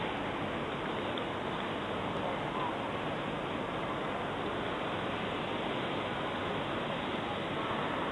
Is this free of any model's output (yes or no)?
yes